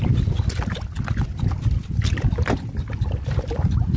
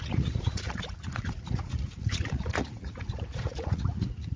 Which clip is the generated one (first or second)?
second